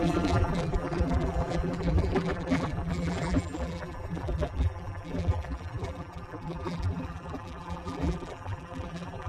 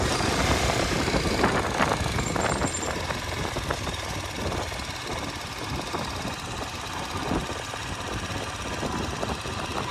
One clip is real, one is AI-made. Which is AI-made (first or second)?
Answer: first